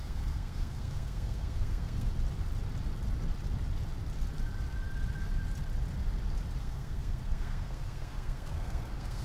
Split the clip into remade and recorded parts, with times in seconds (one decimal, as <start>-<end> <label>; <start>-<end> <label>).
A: 0.0-2.1 remade; 2.1-6.6 recorded; 6.6-9.2 remade